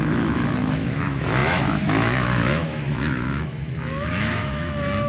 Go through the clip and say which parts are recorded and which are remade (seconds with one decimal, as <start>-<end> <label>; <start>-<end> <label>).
0.0-5.1 remade